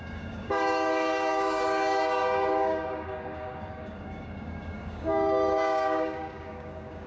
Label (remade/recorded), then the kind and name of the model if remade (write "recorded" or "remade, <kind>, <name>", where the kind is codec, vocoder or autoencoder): remade, codec, DAC